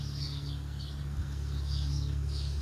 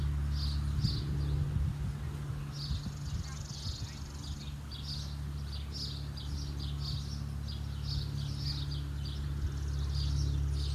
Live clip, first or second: second